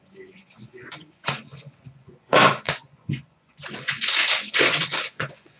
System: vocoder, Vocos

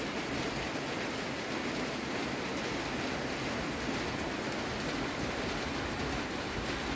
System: none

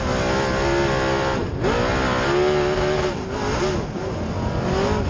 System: none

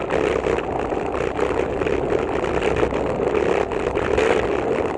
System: none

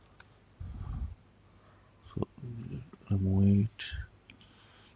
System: none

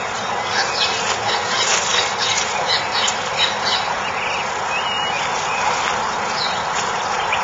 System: none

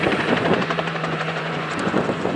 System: vocoder, Vocos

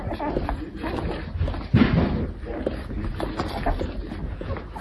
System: none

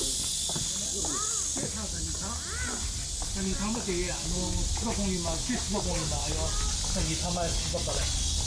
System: none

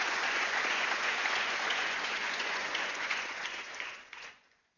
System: vocoder, Vocos